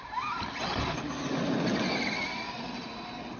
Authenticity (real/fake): real